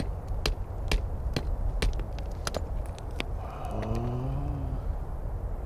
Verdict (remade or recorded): recorded